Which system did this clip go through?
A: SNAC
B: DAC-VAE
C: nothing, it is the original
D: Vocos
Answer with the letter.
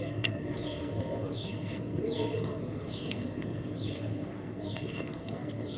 A